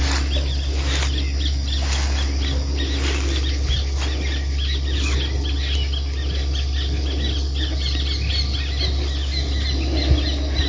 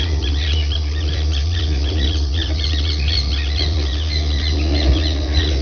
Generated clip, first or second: second